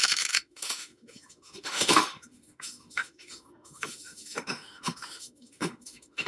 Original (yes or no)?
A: no